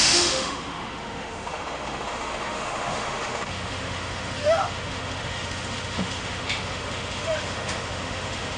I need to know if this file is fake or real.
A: fake